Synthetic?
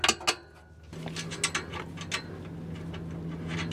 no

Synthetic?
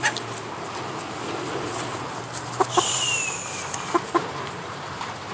no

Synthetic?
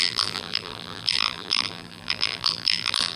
yes